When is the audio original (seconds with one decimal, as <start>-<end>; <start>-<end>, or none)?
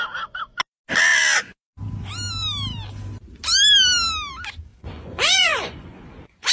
0.0-4.7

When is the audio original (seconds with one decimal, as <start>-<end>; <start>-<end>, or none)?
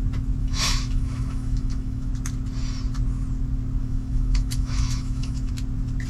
0.0-0.4; 2.1-3.8; 5.5-6.1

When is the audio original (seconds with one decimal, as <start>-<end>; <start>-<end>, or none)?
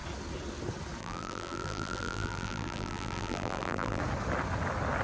0.0-1.0; 4.0-5.0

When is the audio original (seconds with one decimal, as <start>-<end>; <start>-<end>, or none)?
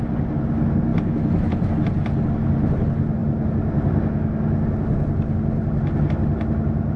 0.0-7.0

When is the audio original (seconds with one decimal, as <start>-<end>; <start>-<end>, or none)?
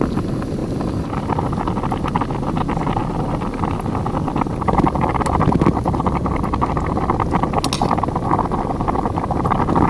0.0-9.9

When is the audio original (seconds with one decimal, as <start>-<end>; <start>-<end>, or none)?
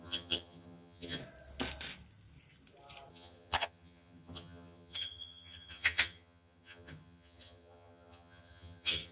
1.2-3.1